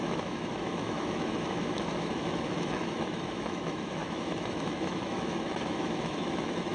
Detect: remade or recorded remade